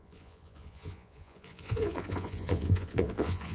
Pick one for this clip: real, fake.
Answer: fake